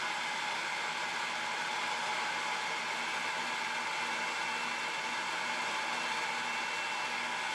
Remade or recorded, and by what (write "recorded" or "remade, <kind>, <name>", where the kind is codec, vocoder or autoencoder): recorded